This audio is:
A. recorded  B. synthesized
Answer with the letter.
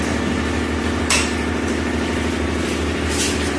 A